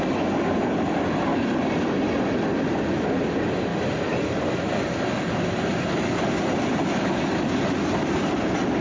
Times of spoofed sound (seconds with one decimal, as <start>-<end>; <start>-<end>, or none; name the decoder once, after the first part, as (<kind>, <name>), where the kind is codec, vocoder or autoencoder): none